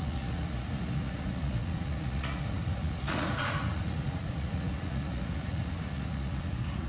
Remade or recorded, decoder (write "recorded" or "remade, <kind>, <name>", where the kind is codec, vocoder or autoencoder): remade, vocoder, Vocos